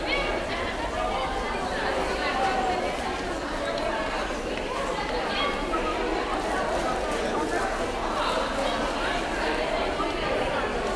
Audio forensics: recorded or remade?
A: recorded